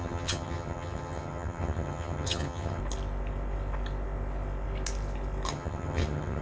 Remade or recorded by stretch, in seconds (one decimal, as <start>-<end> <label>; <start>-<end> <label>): 0.0-2.8 remade; 2.8-5.5 recorded; 5.5-6.4 remade